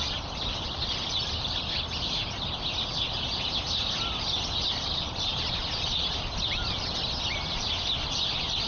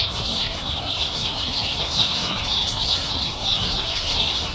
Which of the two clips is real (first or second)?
first